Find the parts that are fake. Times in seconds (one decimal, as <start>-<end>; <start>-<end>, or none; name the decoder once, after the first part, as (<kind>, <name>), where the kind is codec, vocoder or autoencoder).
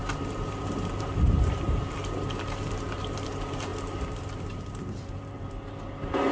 0.0-6.3 (vocoder, BigVGAN v2)